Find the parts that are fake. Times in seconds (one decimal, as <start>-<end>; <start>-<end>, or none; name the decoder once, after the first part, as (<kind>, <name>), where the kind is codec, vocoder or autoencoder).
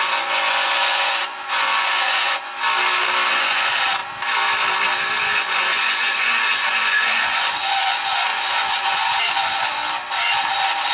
0.0-2.5 (vocoder, Vocos); 3.3-4.0; 5.2-9.8